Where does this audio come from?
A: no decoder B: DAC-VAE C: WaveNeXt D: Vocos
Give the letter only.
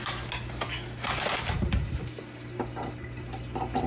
A